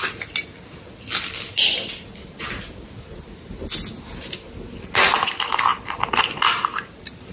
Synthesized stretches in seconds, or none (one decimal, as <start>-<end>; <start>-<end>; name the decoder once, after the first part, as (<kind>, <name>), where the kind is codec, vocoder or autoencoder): none